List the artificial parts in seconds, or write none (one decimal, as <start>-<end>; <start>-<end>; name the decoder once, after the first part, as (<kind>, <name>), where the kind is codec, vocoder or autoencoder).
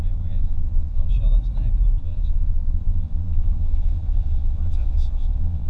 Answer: 0.0-1.1 (vocoder, Vocos); 2.0-5.7